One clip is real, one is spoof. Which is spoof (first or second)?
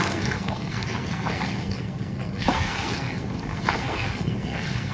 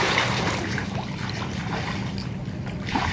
first